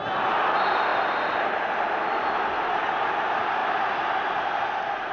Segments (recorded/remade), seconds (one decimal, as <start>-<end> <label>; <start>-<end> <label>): 0.0-0.9 recorded; 0.9-2.1 remade; 2.1-5.1 recorded